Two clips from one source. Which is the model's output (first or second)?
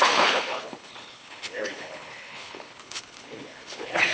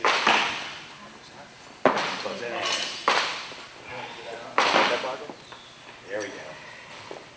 first